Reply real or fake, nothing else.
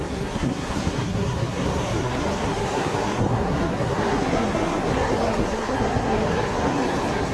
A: fake